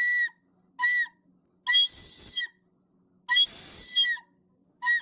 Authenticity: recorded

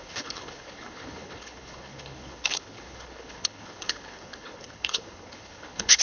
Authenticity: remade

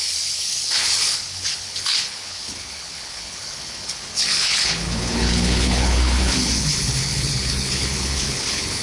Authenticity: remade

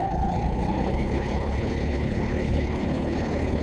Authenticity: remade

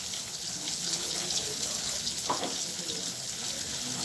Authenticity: remade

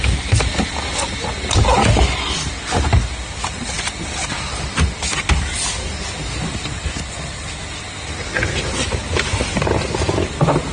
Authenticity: recorded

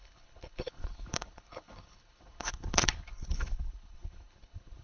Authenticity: remade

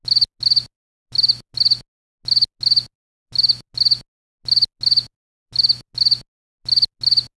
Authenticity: recorded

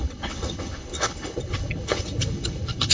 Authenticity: remade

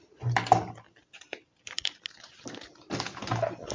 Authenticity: recorded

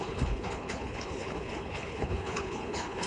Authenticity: remade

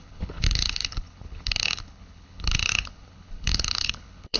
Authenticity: remade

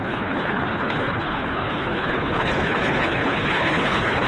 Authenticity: remade